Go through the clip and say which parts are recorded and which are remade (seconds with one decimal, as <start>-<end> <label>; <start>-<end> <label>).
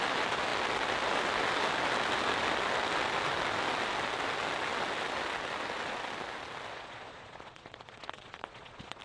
0.0-6.7 recorded; 6.7-9.0 remade